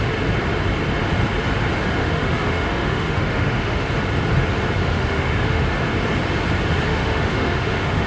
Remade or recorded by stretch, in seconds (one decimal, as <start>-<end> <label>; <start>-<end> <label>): 0.0-2.0 recorded; 2.0-3.9 remade; 3.9-4.8 recorded; 4.8-5.6 remade; 5.6-6.9 recorded; 6.9-8.1 remade